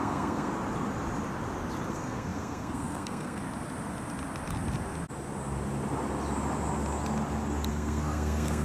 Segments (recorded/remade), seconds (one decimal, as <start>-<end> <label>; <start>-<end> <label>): 0.0-0.5 remade; 0.5-1.9 recorded; 1.9-3.4 remade; 3.4-7.7 recorded; 7.7-8.6 remade